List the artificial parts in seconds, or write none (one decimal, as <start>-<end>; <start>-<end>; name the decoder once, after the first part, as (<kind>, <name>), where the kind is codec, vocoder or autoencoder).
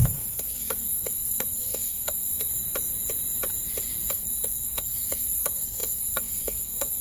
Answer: 0.0-2.5 (codec, SNAC); 4.1-7.0